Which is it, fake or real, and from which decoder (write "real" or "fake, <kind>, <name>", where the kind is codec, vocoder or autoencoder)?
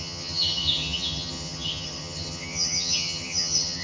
fake, vocoder, HiFi-GAN